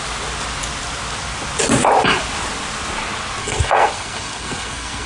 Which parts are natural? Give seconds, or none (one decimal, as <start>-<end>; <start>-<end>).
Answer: 0.0-3.4